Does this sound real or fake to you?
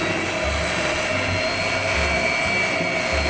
real